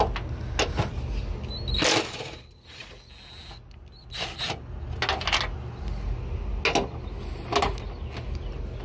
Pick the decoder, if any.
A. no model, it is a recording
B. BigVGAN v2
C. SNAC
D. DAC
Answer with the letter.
A